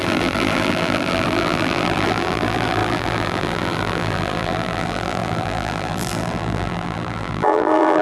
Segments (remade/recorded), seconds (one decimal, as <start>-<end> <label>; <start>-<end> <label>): 0.0-8.0 remade